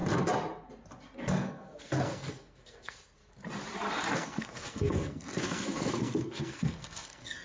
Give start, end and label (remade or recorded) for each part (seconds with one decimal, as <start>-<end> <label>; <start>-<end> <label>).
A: 0.0-1.3 recorded; 1.3-3.2 remade; 3.2-4.1 recorded; 4.1-7.4 remade